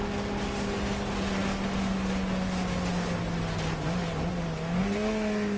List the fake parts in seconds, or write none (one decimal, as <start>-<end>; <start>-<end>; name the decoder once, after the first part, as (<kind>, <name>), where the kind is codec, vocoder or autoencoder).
none